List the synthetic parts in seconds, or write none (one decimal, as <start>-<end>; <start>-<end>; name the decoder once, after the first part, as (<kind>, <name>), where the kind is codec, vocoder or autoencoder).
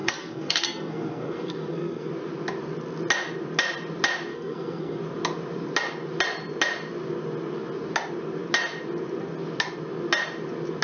0.0-2.1 (codec, SNAC); 4.3-5.0